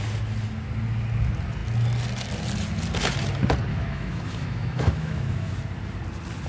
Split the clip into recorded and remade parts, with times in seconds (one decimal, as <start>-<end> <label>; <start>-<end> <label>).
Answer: 0.0-3.7 recorded; 3.7-5.5 remade; 5.5-6.5 recorded